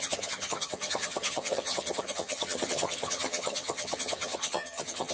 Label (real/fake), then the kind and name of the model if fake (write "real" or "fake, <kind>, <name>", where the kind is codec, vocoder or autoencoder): fake, vocoder, HiFi-GAN